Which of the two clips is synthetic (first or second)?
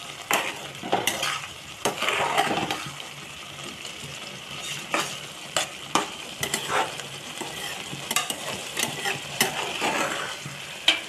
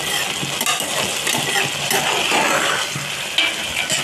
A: first